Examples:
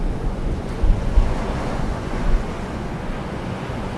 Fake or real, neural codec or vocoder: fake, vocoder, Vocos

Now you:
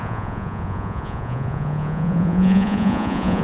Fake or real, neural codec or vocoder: fake, vocoder, Vocos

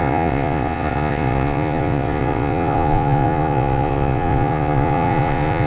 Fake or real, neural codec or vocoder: fake, vocoder, Vocos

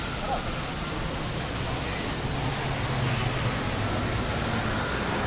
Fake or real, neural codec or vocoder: real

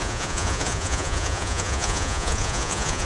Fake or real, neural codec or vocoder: fake, vocoder, Vocos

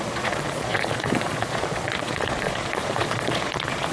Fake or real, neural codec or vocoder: fake, vocoder, Vocos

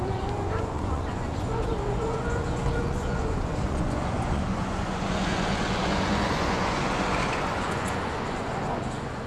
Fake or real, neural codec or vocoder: fake, vocoder, Vocos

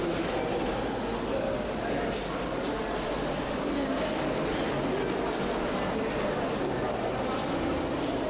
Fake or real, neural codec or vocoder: real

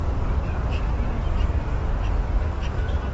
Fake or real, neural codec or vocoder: real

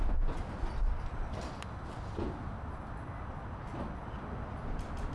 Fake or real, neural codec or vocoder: real